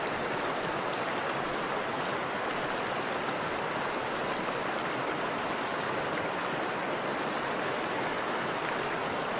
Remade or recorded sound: recorded